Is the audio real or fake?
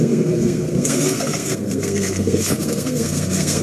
fake